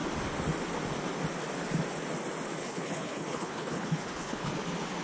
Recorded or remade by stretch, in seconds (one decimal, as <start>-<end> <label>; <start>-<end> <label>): 0.0-2.6 recorded; 2.6-4.5 remade; 4.5-5.0 recorded